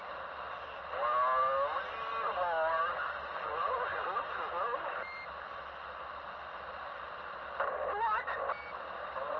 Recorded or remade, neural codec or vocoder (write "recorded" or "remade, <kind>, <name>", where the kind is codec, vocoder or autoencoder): recorded